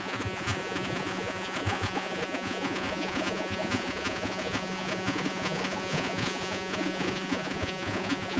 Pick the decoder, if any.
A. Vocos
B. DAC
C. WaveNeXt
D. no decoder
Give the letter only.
A